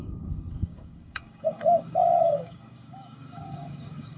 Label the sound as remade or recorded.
remade